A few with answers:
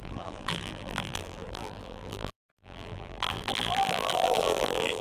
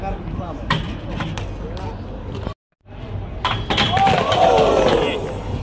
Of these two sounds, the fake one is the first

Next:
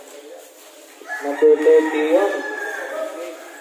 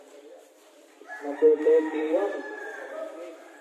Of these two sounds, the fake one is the second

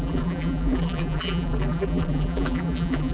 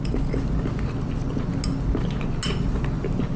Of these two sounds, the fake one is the first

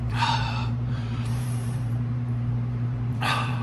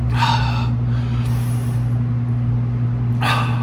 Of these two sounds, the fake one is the first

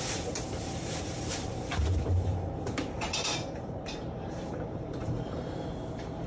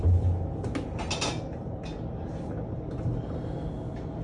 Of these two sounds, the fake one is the first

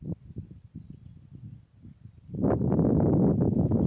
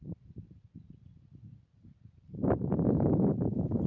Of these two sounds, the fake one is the second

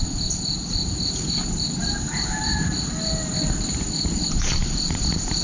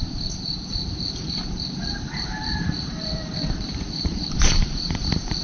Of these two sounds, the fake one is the second